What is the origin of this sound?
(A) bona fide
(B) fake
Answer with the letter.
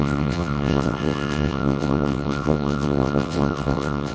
B